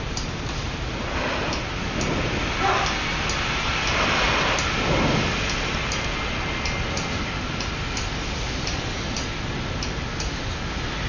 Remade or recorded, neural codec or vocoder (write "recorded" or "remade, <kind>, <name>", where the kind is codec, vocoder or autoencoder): recorded